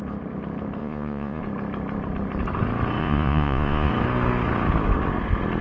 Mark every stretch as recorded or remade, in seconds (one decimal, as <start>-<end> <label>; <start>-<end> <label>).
0.0-0.8 recorded; 0.8-1.4 remade; 1.4-3.0 recorded; 3.0-3.9 remade; 3.9-5.6 recorded